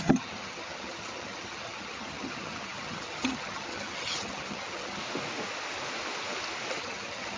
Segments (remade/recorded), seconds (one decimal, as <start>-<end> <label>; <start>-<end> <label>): 0.0-5.0 remade; 5.0-6.8 recorded; 6.8-7.4 remade

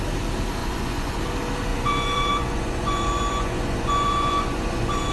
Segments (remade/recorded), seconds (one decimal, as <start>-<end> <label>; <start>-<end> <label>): 0.0-0.6 recorded; 0.6-1.2 remade; 1.2-1.7 recorded; 1.7-5.1 remade

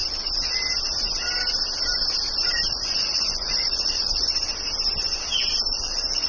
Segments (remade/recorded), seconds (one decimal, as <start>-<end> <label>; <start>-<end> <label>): 0.0-2.7 recorded; 2.7-4.3 remade; 4.3-5.7 recorded; 5.7-6.3 remade

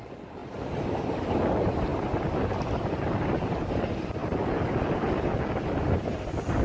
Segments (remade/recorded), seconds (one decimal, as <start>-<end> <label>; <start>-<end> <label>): 0.0-6.6 recorded

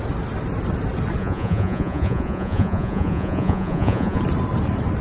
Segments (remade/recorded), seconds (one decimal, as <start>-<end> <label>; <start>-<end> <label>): 0.0-1.2 recorded; 1.2-4.2 remade; 4.2-5.0 recorded

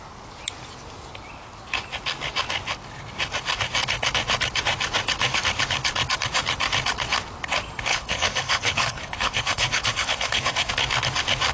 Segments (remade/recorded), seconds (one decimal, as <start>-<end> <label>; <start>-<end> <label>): 0.0-7.9 recorded; 7.9-10.7 remade; 10.7-11.5 recorded

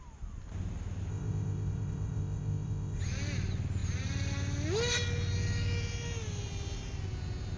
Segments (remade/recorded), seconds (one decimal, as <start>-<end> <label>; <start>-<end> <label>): 0.0-1.1 recorded; 1.1-3.0 remade; 3.0-7.6 recorded

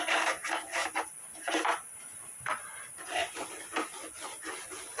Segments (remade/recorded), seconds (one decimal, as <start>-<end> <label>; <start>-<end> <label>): 0.0-5.0 recorded